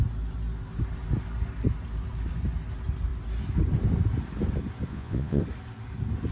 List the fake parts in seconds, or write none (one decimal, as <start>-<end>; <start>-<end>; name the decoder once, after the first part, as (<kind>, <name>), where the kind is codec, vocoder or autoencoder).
4.9-5.4 (vocoder, Vocos)